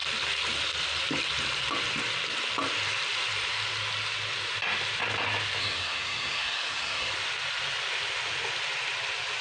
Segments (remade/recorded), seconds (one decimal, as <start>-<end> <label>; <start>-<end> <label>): 0.0-5.6 recorded; 5.6-7.1 remade; 7.1-9.4 recorded